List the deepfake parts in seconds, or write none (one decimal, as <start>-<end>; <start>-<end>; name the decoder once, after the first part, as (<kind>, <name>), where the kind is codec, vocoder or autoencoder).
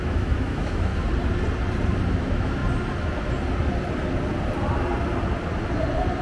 0.0-0.9 (autoencoder, DAC-VAE); 2.2-2.6